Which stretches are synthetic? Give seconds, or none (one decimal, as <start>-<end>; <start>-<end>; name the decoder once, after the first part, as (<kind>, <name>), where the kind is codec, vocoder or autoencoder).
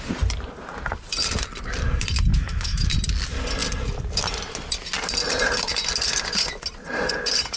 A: 2.3-2.9 (autoencoder, DAC-VAE)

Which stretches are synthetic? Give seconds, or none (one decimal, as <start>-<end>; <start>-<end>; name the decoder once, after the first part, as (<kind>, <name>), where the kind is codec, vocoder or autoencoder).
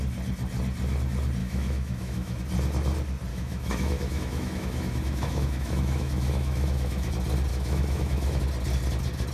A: 1.4-2.4 (autoencoder, DAC-VAE); 3.3-7.1; 7.5-8.4